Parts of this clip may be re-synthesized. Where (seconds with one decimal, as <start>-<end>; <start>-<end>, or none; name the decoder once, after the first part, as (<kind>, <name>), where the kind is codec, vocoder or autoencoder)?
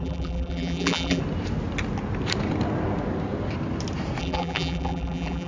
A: 0.0-1.2 (vocoder, BigVGAN v2); 4.2-5.5